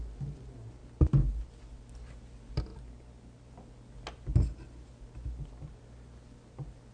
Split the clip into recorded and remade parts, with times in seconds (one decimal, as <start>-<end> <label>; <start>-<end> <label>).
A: 0.0-6.9 recorded